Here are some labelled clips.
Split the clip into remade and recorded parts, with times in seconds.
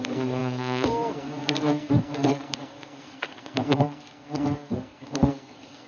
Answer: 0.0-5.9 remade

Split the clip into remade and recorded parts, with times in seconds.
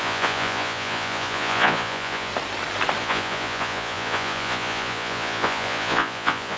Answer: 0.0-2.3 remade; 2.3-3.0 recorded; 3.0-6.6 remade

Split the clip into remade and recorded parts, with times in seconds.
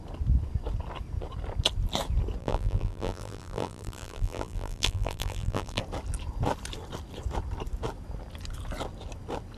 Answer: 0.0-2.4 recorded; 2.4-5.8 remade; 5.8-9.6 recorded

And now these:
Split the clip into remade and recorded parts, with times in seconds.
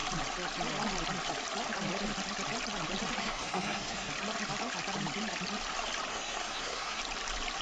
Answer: 0.0-3.2 recorded; 3.2-4.1 remade; 4.1-6.1 recorded; 6.1-7.0 remade; 7.0-7.6 recorded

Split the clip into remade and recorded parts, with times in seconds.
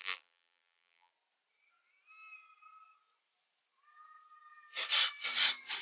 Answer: 0.0-1.1 remade; 1.1-5.8 recorded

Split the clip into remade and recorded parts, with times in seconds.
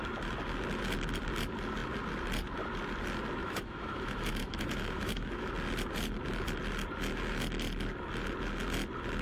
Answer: 0.0-3.4 recorded; 3.4-5.5 remade; 5.5-9.2 recorded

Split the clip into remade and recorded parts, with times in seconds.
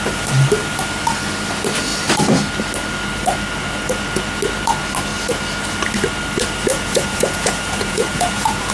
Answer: 0.0-6.7 recorded; 6.7-8.7 remade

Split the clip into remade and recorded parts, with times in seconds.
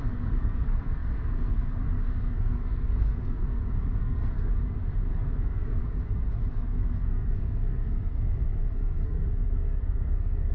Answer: 0.0-4.5 remade; 4.5-5.1 recorded; 5.1-5.8 remade; 5.8-6.5 recorded; 6.5-10.5 remade